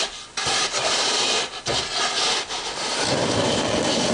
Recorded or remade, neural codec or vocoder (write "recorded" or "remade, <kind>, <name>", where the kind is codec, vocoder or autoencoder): recorded